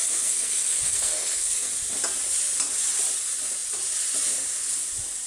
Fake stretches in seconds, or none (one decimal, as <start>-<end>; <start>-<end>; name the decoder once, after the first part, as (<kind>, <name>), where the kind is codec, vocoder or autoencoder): 0.0-1.7 (codec, SNAC)